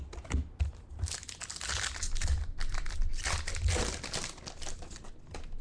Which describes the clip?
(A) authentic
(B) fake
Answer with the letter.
A